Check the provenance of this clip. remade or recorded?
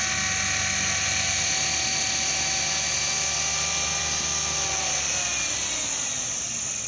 recorded